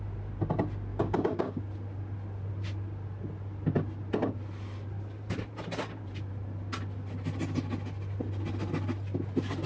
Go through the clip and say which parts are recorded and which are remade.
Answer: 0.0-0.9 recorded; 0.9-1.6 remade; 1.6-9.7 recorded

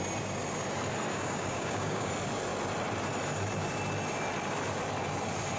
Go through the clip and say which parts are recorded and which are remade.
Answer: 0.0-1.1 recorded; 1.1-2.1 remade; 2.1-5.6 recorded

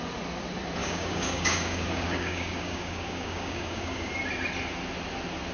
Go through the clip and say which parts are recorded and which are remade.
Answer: 0.0-0.8 recorded; 0.8-4.1 remade; 4.1-5.5 recorded

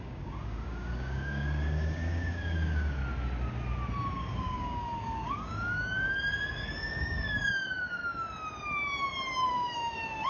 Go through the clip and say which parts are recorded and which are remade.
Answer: 0.0-3.0 remade; 3.0-4.2 recorded; 4.2-8.0 remade; 8.0-9.5 recorded; 9.5-10.3 remade

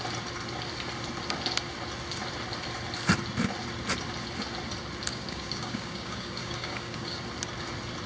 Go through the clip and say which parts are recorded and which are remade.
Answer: 0.0-5.1 recorded; 5.1-7.2 remade; 7.2-8.1 recorded

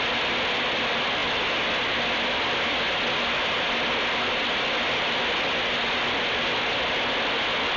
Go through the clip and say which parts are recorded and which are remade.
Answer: 0.0-7.8 recorded